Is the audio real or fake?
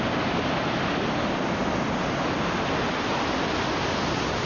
real